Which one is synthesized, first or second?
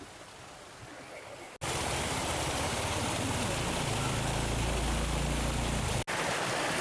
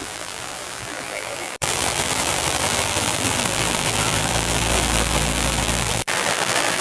second